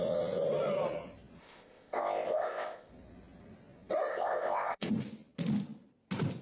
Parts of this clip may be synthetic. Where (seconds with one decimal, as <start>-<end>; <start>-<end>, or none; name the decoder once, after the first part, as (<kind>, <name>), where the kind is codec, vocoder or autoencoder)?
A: 1.4-2.9 (codec, ZipCodec); 4.1-4.9